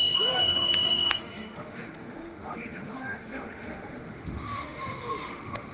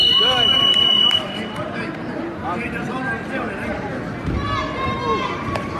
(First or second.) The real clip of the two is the second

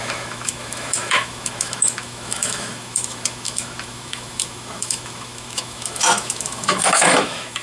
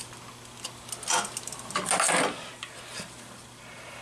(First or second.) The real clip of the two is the second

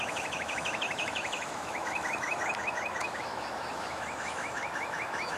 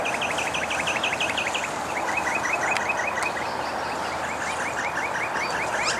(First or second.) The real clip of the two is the second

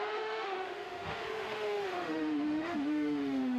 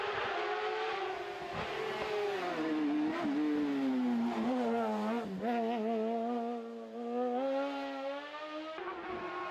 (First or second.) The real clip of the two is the second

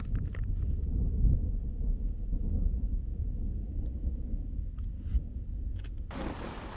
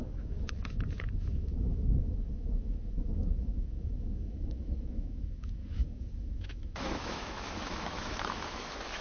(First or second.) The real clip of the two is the first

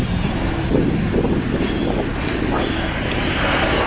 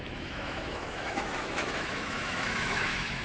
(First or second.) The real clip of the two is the first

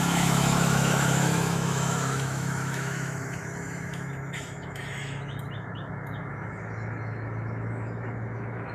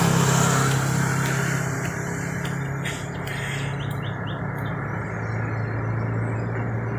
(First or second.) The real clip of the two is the second